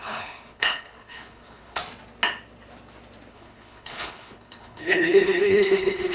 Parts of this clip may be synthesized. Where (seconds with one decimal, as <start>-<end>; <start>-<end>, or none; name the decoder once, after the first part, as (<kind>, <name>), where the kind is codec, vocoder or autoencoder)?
0.0-1.8 (codec, HILCodec); 3.3-6.1